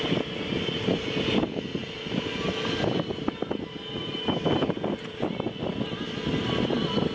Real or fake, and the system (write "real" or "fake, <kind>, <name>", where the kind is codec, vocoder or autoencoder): real